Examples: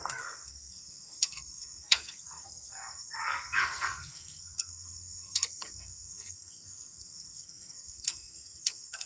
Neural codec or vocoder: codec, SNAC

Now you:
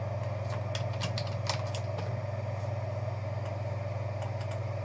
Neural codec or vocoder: none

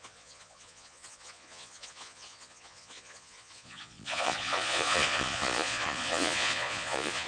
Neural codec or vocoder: vocoder, Vocos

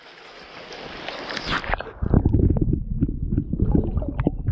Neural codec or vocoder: none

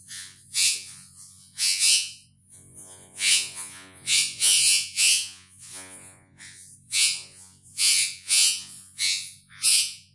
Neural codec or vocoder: vocoder, Vocos